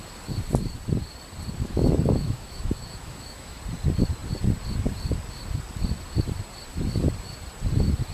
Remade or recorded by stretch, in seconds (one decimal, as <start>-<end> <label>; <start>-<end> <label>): 0.0-1.6 recorded; 1.6-3.6 remade; 3.6-8.1 recorded